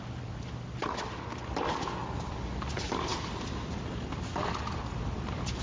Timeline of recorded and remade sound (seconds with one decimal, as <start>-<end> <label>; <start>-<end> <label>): 0.0-5.6 recorded